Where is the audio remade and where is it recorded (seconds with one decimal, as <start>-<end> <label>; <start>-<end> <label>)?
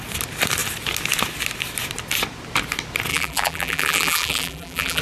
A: 0.0-3.1 recorded; 3.1-5.0 remade